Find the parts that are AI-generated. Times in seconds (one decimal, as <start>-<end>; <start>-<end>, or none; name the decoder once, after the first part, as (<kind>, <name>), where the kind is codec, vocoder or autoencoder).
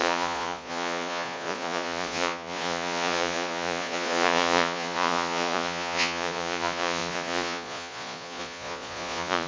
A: 0.0-9.5 (vocoder, Vocos)